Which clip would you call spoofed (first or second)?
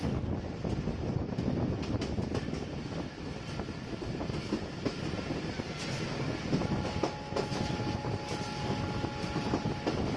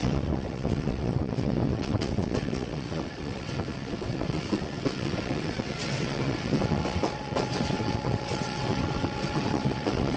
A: second